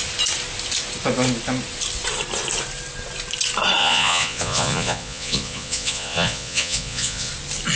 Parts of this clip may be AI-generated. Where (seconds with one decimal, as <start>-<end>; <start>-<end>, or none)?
3.8-7.3